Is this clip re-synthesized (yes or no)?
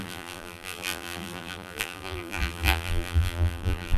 yes